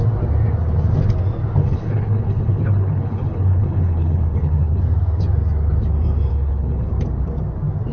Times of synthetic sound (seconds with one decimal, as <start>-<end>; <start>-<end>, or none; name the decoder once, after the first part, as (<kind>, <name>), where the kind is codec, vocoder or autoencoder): 1.6-4.8 (codec, HILCodec); 6.3-6.9